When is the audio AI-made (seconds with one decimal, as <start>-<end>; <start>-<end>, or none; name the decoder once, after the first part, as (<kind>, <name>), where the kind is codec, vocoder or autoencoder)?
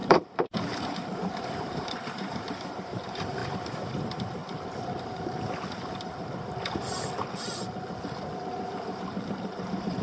0.0-3.4 (vocoder, BigVGAN v2); 4.0-4.4; 8.5-10.0